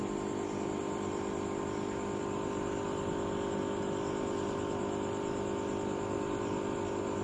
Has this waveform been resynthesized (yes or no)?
no